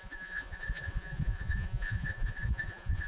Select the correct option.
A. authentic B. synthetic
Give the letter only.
B